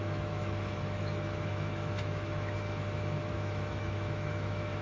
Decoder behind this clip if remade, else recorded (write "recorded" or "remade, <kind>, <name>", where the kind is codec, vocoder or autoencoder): remade, autoencoder, DAC-VAE